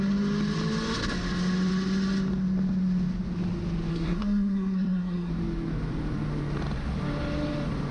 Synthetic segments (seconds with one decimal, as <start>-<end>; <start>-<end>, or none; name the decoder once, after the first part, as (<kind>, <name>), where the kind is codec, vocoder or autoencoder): 3.9-5.3 (codec, SNAC)